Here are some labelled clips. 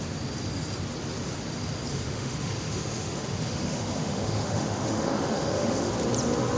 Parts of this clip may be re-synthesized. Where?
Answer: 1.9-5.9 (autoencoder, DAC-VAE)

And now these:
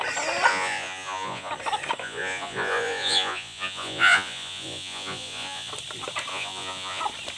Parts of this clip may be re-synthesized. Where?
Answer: 0.5-1.5 (vocoder, Vocos); 2.0-5.7; 6.3-7.0